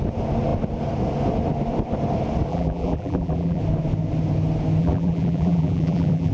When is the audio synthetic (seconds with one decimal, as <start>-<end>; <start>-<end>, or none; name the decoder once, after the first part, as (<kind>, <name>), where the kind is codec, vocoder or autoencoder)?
2.5-3.6 (vocoder, BigVGAN v2); 4.8-6.3